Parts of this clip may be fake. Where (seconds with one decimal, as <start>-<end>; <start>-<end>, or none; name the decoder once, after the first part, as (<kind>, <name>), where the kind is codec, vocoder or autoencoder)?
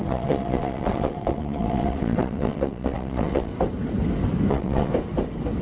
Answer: 0.0-3.5 (vocoder, WaveNeXt); 4.5-4.9